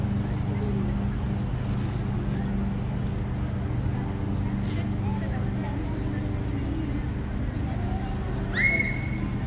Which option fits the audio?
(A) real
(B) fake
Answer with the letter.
A